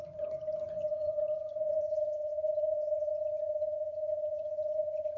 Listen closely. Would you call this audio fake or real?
fake